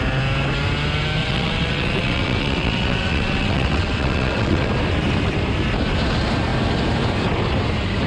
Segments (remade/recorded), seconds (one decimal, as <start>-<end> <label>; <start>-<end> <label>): 0.0-1.2 recorded; 1.2-4.7 remade; 4.7-8.1 recorded